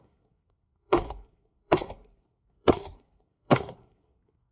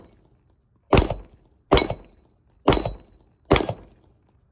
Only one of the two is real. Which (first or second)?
second